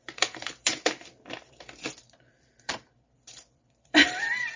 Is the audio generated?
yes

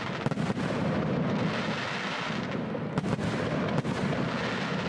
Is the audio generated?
no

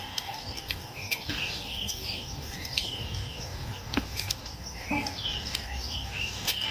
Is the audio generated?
yes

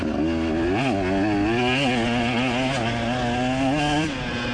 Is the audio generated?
no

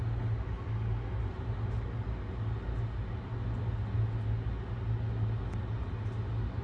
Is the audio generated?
no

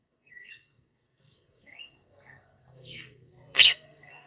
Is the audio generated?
yes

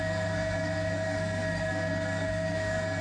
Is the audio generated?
yes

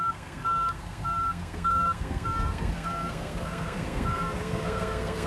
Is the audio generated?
yes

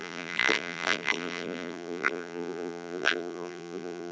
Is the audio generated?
yes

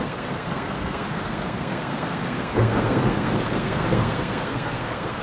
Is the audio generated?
yes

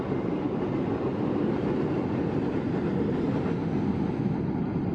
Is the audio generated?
no